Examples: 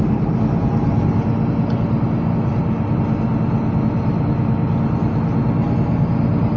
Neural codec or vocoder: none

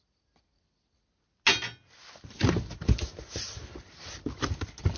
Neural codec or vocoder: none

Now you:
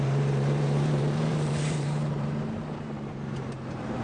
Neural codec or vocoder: vocoder, BigVGAN v2